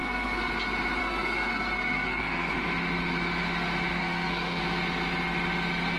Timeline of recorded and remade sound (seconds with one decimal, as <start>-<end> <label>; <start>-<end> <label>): 0.0-0.5 remade; 0.5-1.0 recorded; 1.0-2.5 remade; 2.5-3.9 recorded; 3.9-4.6 remade; 4.6-6.0 recorded

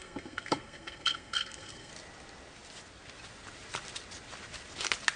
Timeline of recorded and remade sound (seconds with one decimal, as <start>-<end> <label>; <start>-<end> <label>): 0.0-1.9 remade; 1.9-5.2 recorded